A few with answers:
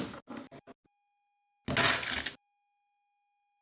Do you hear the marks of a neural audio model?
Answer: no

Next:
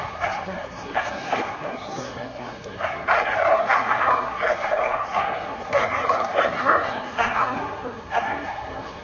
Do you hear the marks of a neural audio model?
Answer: yes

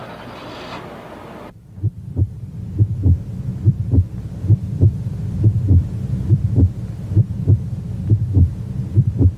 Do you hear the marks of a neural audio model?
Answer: no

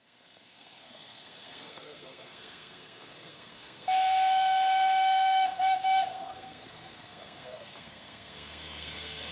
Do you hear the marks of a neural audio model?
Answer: yes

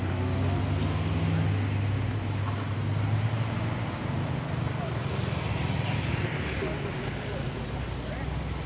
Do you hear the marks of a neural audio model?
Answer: no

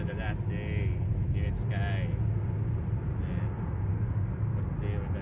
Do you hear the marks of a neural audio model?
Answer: no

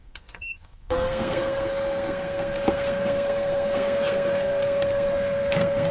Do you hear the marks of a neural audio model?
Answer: yes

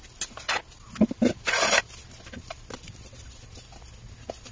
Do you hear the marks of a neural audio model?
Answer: no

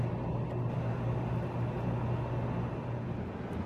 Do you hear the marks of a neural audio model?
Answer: no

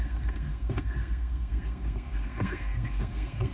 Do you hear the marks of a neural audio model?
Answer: yes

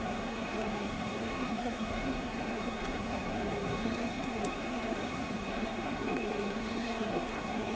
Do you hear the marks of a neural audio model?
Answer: yes